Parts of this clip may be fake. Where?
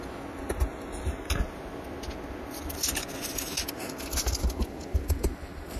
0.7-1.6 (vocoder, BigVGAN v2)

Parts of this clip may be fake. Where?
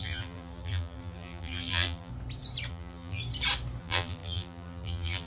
0.0-2.1 (vocoder, BigVGAN v2); 2.7-3.2; 3.8-5.3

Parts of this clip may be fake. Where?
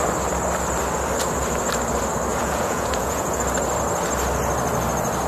2.3-3.4 (vocoder, Vocos)